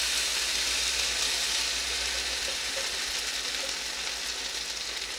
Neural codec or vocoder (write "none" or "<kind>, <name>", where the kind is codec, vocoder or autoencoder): none